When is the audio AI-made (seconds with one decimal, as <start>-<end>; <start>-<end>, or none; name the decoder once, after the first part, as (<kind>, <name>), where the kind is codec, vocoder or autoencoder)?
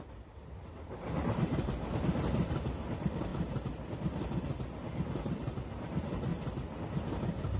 0.0-3.3 (vocoder, BigVGAN v2); 4.4-6.3